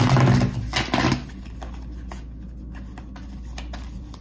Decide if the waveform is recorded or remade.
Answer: recorded